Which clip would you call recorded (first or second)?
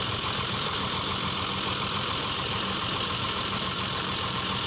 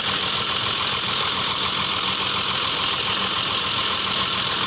second